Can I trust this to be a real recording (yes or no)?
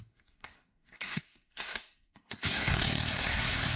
no